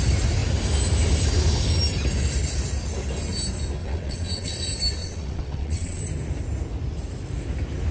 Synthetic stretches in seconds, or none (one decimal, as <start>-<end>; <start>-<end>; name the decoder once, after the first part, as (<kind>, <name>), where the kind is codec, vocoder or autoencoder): 3.8-4.5 (vocoder, WaveNeXt); 5.0-6.0